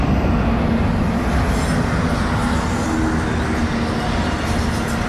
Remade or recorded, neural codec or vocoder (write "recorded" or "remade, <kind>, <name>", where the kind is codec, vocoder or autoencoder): recorded